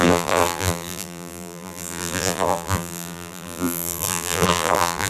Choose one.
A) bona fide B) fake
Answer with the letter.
B